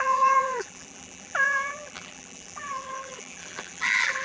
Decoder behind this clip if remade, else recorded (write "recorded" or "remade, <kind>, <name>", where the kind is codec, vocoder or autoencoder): remade, vocoder, BigVGAN v2